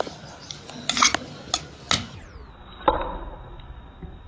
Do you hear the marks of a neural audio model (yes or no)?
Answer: no